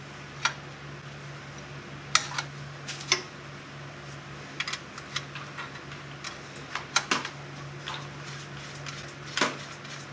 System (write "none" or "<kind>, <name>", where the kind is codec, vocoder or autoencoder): none